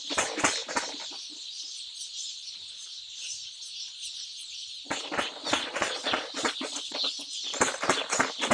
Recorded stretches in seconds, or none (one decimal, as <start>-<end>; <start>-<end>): 0.0-5.4; 7.2-8.5